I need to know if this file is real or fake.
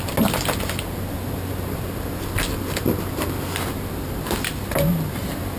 real